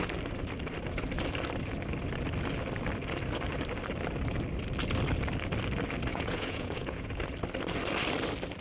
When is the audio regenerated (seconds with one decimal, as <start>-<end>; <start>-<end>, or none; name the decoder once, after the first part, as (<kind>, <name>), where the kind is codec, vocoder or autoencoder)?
6.1-7.2 (vocoder, Vocos)